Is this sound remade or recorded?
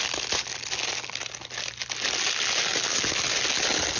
recorded